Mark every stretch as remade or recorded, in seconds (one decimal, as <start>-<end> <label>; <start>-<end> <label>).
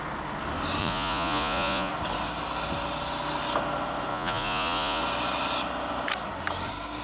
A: 0.0-0.8 recorded; 0.8-1.9 remade; 1.9-4.1 recorded; 4.1-5.0 remade; 5.0-7.0 recorded